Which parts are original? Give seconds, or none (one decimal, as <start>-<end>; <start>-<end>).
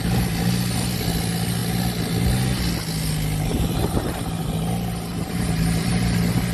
0.0-3.5; 4.6-5.1; 5.9-6.5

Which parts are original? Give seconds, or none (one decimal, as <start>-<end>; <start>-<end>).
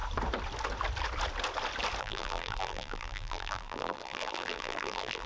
0.0-2.0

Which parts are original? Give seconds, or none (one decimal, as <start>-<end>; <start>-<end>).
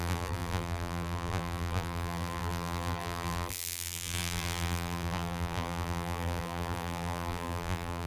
none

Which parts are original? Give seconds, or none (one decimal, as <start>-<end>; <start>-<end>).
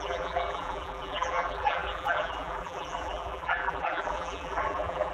none